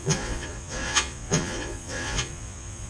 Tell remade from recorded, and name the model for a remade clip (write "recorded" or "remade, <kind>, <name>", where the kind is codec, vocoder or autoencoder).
remade, vocoder, Vocos